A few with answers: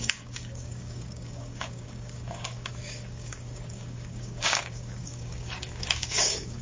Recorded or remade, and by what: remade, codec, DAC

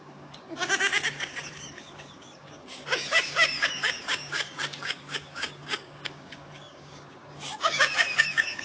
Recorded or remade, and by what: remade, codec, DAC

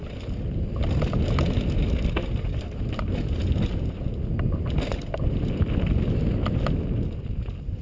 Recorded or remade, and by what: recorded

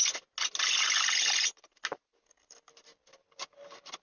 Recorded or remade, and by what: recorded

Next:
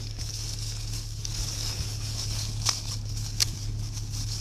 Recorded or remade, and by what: remade, codec, DAC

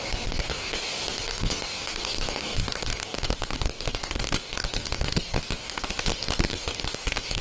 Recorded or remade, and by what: remade, codec, DAC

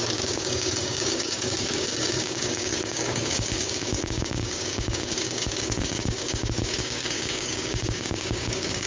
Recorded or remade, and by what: remade, codec, DAC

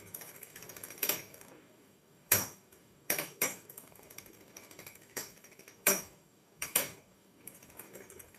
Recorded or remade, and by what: remade, codec, DAC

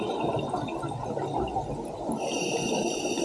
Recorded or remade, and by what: recorded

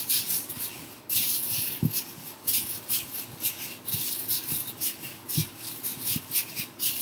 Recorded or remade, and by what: remade, codec, DAC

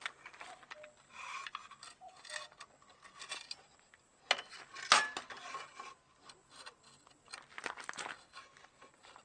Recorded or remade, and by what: recorded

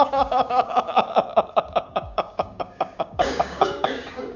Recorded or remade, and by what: remade, codec, DAC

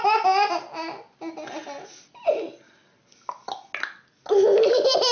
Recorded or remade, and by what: recorded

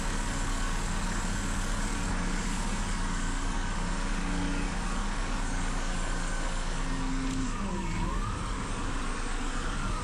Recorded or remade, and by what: remade, codec, DAC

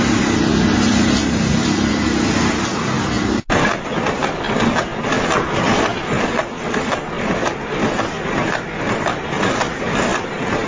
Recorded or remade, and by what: recorded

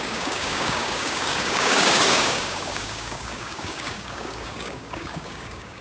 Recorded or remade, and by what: remade, codec, DAC